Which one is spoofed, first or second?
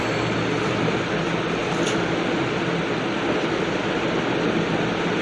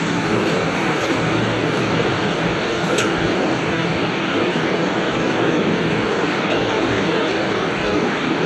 second